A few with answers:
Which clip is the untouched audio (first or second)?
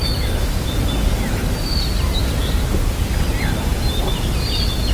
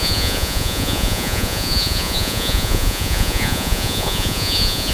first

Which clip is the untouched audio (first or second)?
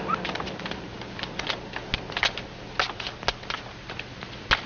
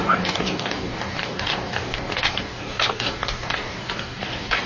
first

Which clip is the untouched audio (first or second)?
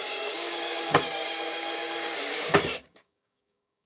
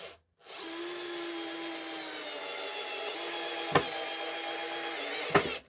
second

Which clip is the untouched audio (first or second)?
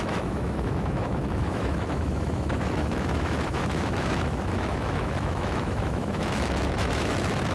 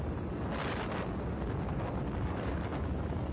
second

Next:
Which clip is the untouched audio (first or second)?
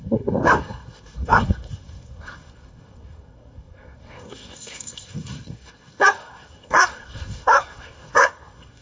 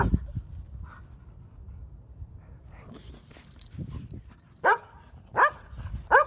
second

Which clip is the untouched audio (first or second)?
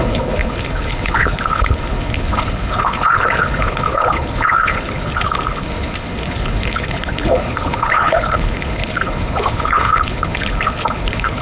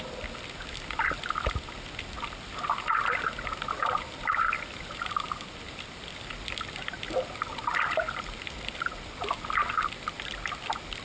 second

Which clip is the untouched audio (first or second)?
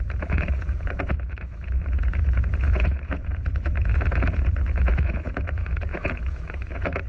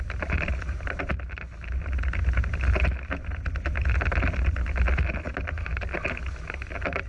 second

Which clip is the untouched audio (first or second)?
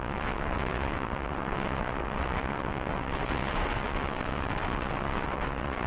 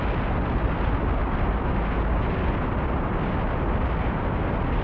second